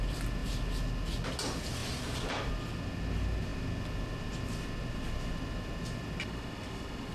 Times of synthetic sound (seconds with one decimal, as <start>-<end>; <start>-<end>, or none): 1.8-2.5